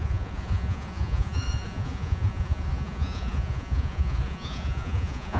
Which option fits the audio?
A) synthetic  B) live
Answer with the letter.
A